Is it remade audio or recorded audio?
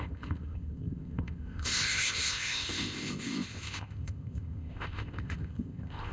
remade